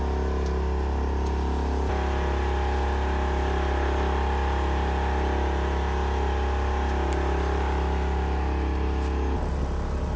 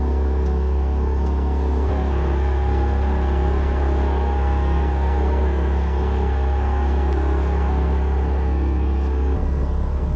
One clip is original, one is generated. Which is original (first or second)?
first